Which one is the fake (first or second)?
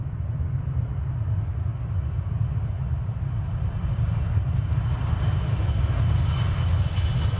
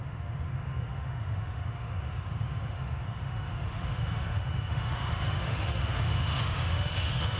second